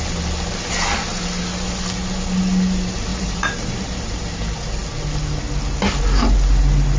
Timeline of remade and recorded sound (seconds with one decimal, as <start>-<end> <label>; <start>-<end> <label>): 0.0-3.1 recorded; 3.1-4.2 remade; 4.2-7.0 recorded